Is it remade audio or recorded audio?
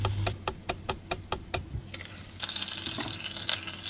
recorded